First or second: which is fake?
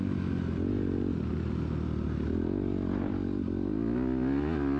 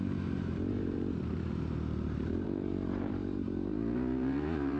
second